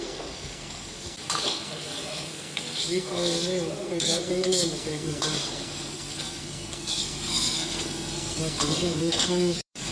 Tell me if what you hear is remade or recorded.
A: remade